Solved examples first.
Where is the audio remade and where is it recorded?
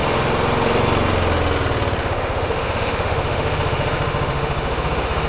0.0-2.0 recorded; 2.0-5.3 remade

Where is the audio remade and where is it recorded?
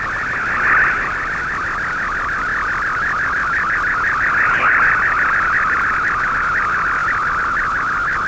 0.0-8.3 recorded